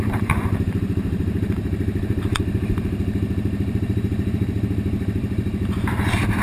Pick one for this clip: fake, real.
fake